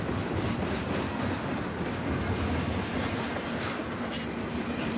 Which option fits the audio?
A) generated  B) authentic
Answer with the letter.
B